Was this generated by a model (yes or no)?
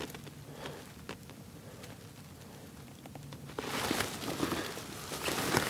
no